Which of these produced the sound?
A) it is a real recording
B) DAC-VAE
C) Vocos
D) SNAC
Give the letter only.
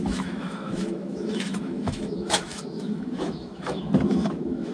B